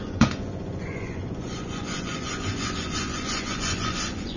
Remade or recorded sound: remade